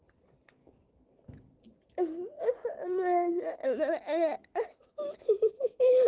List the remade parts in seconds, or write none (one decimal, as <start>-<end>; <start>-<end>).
0.6-2.5; 3.6-6.1